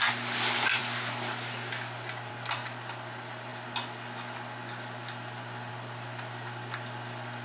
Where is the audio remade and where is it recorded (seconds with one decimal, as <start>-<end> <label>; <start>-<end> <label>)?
0.0-7.4 recorded